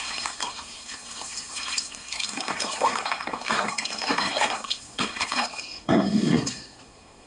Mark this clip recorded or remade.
remade